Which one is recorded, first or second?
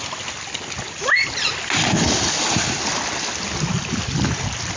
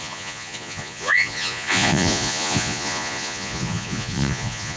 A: first